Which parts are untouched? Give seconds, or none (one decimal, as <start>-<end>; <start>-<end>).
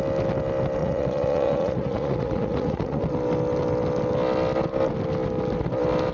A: 0.0-0.8; 3.0-6.1